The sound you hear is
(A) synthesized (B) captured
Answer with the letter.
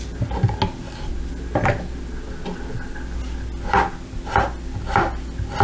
B